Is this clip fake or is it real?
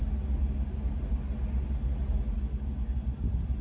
real